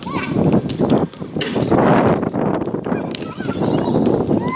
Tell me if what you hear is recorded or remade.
recorded